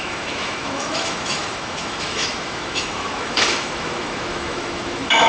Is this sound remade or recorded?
remade